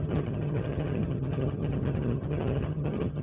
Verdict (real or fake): fake